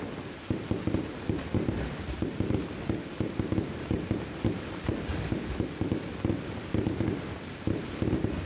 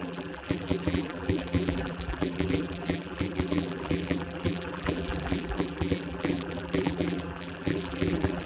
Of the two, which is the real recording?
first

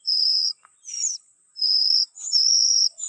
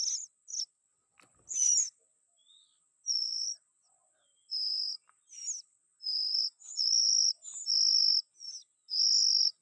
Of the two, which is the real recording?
second